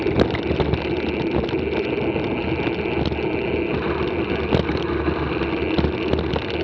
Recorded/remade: recorded